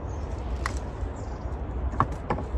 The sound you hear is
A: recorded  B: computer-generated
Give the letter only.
A